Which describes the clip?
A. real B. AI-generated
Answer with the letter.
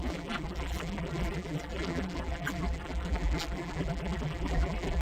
B